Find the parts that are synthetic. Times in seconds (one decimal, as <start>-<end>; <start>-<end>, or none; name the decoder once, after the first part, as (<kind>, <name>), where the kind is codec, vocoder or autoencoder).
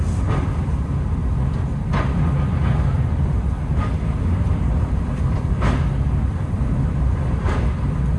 0.0-1.2 (vocoder, BigVGAN v2); 4.6-8.2